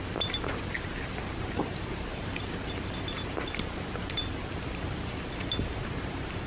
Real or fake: fake